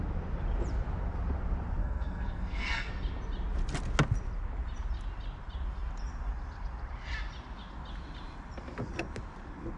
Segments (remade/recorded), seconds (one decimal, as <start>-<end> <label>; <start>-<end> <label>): 0.0-1.8 recorded; 1.8-2.9 remade; 2.9-9.8 recorded